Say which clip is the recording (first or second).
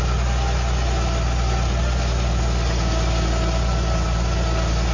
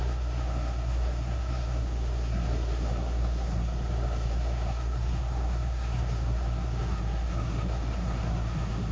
first